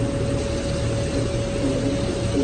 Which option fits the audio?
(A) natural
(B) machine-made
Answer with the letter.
A